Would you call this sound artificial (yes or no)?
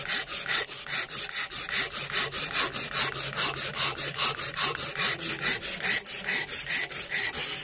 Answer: no